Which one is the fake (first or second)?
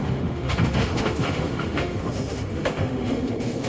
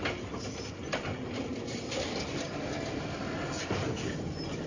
first